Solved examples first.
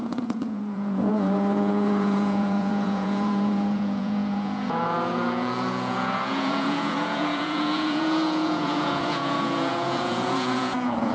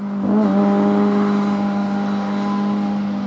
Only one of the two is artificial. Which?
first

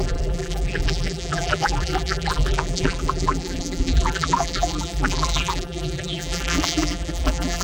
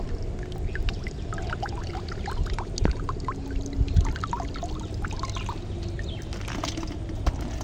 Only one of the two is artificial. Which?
first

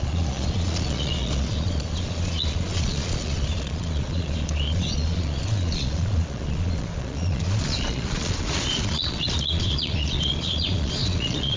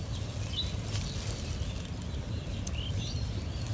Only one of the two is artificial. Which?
first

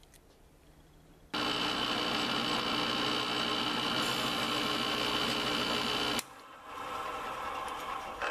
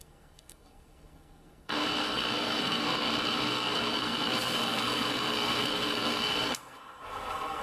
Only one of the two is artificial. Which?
second